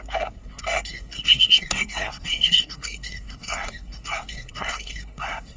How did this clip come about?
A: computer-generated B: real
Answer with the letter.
A